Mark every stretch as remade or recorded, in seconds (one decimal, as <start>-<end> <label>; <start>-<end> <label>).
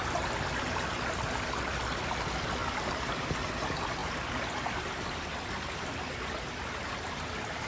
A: 0.0-2.6 recorded; 2.6-3.3 remade; 3.3-7.7 recorded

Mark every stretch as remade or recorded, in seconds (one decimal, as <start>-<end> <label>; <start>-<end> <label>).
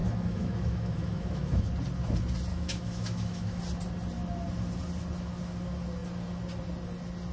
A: 0.0-1.7 remade; 1.7-2.5 recorded; 2.5-3.6 remade; 3.6-7.3 recorded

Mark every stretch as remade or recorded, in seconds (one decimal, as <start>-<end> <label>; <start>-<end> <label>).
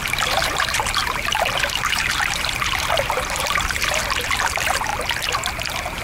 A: 0.0-4.9 remade; 4.9-5.6 recorded; 5.6-6.0 remade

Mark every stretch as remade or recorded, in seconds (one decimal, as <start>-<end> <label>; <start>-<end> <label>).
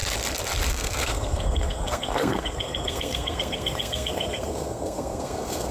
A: 0.0-0.7 recorded; 0.7-5.7 remade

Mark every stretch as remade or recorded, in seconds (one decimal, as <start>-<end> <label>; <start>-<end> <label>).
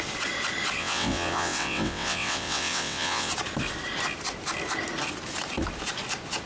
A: 0.0-0.8 recorded; 0.8-3.3 remade; 3.3-6.5 recorded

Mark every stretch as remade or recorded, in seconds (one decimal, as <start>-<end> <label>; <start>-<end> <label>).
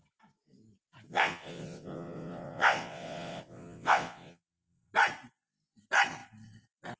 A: 0.0-1.1 recorded; 1.1-4.9 remade; 4.9-7.0 recorded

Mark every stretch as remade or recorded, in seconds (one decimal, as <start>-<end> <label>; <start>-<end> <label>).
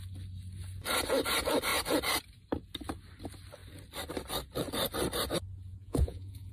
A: 0.0-5.7 recorded; 5.7-6.5 remade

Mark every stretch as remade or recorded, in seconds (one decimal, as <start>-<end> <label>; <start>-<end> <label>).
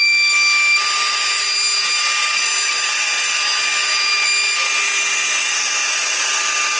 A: 0.0-6.8 recorded